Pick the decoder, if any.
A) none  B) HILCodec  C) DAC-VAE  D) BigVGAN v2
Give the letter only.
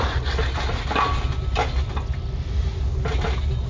A